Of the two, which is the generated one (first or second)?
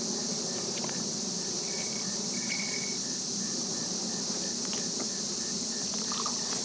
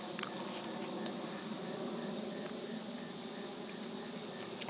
first